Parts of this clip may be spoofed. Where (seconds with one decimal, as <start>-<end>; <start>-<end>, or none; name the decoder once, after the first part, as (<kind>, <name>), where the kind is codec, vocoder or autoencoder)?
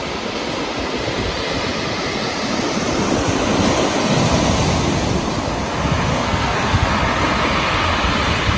6.1-6.9 (codec, SNAC)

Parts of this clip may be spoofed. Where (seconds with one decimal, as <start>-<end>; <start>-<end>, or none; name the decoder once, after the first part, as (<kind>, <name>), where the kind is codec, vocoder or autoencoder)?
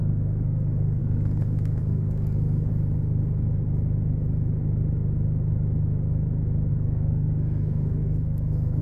0.0-2.7 (codec, SNAC); 6.7-8.8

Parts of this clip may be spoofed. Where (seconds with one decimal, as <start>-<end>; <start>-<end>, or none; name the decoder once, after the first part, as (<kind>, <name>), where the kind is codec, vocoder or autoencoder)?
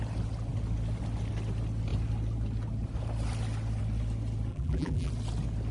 4.5-5.1 (vocoder, BigVGAN v2)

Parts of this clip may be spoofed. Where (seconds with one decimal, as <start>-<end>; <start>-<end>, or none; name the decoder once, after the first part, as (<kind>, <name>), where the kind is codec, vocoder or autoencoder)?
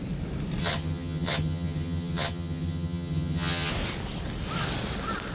0.6-3.7 (vocoder, HiFi-GAN)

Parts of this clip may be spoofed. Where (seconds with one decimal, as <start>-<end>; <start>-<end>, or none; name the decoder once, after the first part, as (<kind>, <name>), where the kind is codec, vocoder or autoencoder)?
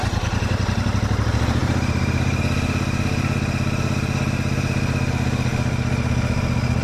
1.6-2.4 (vocoder, BigVGAN v2)